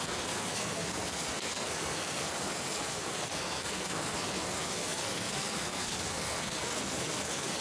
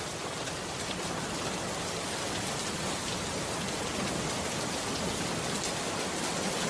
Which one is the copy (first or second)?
first